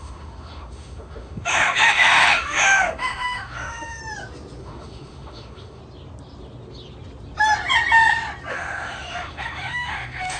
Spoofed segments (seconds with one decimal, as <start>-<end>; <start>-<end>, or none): 0.0-4.0; 4.6-5.8; 8.5-10.4